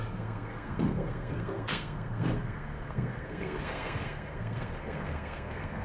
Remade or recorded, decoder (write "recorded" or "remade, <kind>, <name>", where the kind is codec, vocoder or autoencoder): remade, codec, SNAC